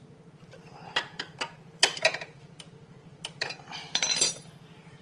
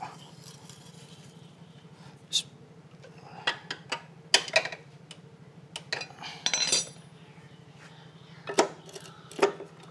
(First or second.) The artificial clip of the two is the first